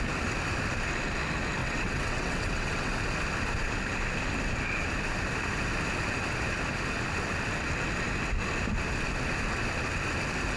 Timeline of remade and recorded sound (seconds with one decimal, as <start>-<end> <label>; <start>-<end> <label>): 0.0-1.6 recorded; 1.6-2.9 remade; 2.9-10.6 recorded